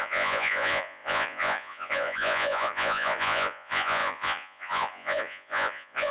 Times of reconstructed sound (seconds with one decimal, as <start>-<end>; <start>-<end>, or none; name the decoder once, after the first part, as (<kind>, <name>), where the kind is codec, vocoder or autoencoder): 0.0-6.1 (vocoder, Vocos)